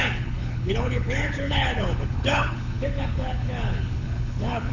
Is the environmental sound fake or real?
fake